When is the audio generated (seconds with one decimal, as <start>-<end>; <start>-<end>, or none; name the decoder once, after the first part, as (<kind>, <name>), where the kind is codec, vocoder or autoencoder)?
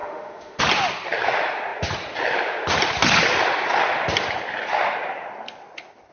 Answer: 0.0-0.6 (autoencoder, DAC-VAE)